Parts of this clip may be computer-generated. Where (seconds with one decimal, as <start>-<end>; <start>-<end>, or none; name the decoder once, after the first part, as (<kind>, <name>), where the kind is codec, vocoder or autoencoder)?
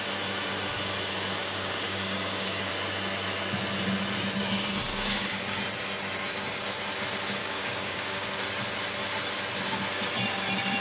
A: 1.4-2.7 (codec, DAC); 4.9-5.6; 7.4-8.4